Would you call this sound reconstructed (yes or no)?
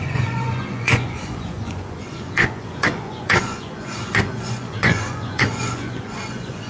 yes